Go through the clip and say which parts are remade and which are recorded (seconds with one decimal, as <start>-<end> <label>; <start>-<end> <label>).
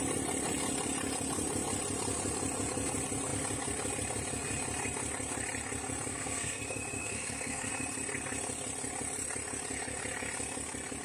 0.0-6.1 recorded; 6.1-6.6 remade; 6.6-7.0 recorded; 7.0-7.7 remade; 7.7-11.0 recorded